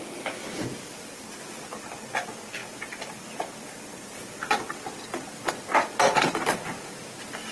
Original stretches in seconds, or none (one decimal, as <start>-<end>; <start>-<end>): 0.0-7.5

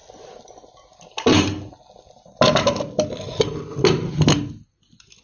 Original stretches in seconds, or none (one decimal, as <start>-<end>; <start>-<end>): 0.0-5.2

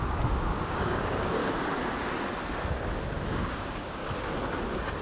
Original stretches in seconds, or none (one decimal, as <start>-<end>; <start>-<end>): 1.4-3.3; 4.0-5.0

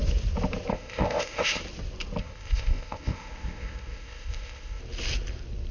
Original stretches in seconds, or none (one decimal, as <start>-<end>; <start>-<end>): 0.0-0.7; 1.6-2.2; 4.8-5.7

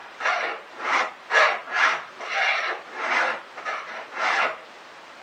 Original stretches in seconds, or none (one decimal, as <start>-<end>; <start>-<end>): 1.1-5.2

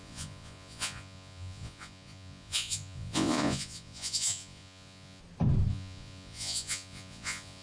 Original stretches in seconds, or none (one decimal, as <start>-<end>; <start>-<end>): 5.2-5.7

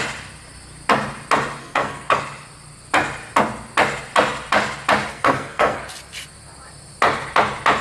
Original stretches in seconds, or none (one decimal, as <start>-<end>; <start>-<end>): 0.0-1.6; 2.2-5.1; 5.8-7.8